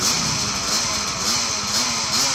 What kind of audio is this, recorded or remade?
recorded